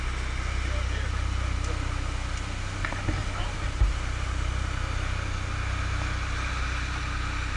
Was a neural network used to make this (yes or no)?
no